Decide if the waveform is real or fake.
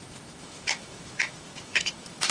fake